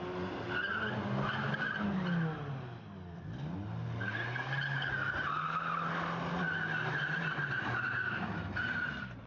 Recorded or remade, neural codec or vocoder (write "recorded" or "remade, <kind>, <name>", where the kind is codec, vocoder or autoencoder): recorded